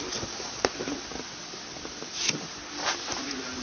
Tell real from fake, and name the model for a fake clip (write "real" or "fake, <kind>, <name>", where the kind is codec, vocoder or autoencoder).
real